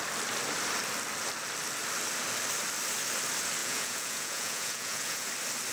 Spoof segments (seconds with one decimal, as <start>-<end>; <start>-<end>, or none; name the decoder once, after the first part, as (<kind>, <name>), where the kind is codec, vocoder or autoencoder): 3.6-5.3 (vocoder, Vocos)